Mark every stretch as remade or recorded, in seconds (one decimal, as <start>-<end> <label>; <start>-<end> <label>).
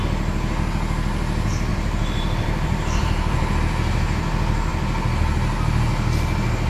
0.0-1.7 recorded; 1.7-3.5 remade; 3.5-6.7 recorded